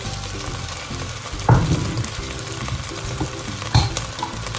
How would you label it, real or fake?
real